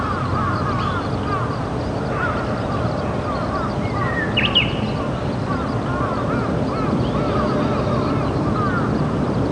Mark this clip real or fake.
real